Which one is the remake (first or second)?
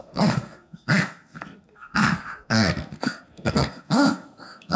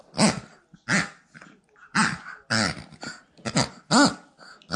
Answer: first